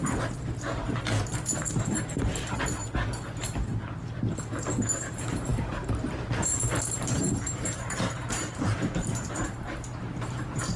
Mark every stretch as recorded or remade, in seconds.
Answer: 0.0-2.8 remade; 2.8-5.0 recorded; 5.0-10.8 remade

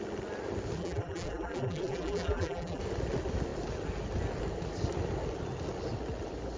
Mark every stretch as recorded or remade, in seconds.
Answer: 0.0-0.8 recorded; 0.8-2.8 remade; 2.8-6.6 recorded

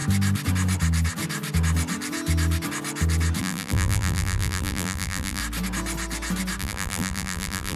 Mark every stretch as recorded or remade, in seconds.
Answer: 0.0-3.4 recorded; 3.4-5.4 remade; 5.4-6.6 recorded; 6.6-7.8 remade

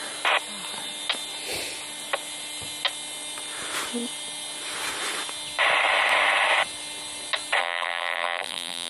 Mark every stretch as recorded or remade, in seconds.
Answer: 0.0-7.6 recorded; 7.6-8.9 remade